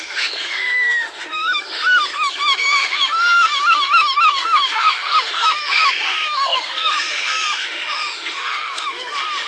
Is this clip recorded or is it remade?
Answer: remade